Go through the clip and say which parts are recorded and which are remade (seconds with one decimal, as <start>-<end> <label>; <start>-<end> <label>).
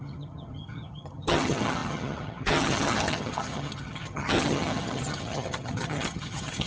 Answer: 0.0-6.7 remade